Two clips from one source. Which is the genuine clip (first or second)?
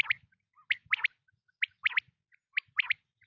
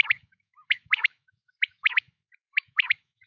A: first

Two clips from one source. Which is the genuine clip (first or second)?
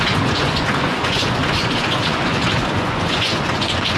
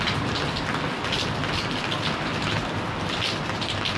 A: second